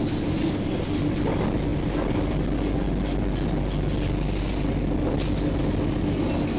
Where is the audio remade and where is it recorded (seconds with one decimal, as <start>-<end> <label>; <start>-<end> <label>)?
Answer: 0.0-6.6 recorded